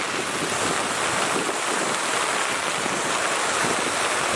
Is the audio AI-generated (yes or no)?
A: no